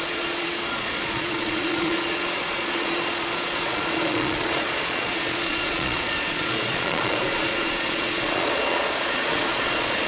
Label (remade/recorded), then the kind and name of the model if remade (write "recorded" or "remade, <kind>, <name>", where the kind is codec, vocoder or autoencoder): remade, vocoder, Vocos